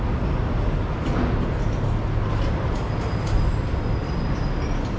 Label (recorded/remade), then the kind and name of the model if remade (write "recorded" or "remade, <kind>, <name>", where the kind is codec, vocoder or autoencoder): recorded